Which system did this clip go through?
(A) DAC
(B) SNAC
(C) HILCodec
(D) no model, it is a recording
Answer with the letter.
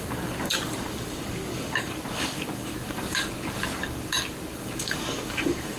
A